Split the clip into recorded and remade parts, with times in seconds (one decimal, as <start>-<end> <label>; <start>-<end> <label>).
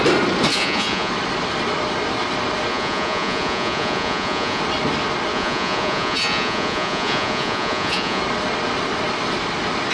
0.0-0.5 recorded; 0.5-1.1 remade; 1.1-2.7 recorded; 2.7-4.6 remade; 4.6-5.3 recorded; 5.3-8.2 remade; 8.2-9.9 recorded